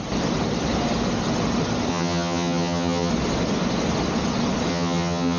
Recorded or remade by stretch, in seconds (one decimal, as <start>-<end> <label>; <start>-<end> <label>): 0.0-1.9 recorded; 1.9-3.1 remade; 3.1-4.7 recorded; 4.7-5.4 remade